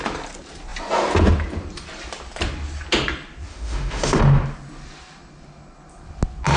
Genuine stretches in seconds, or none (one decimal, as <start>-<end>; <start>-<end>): 0.0-3.5; 4.2-6.6